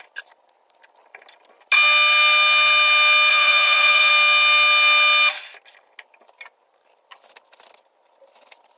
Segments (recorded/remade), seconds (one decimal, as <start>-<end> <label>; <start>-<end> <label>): 0.0-3.3 recorded; 3.3-4.1 remade; 4.1-8.8 recorded